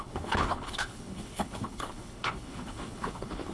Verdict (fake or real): fake